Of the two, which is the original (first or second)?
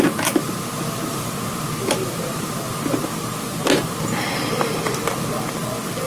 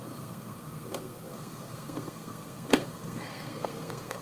first